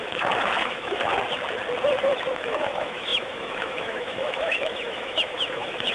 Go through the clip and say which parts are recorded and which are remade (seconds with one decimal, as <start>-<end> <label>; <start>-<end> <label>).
0.0-1.1 remade; 1.1-2.3 recorded; 2.3-5.9 remade